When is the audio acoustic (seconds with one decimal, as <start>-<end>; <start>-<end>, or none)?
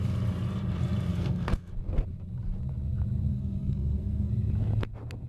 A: 0.0-1.1; 1.7-3.3; 4.3-5.3